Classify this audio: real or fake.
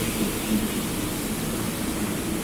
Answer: real